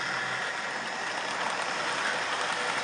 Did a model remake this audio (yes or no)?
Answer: no